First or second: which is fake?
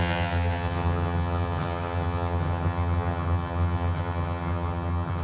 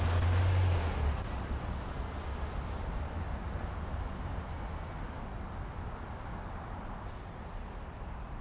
first